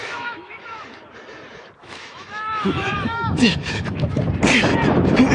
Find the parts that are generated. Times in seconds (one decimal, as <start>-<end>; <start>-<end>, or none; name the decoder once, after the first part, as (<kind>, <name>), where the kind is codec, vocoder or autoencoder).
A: 0.0-0.6 (autoencoder, DAC-VAE); 1.8-4.2